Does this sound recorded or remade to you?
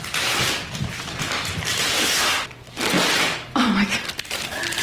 recorded